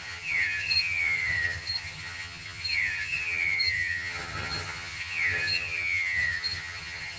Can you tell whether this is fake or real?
fake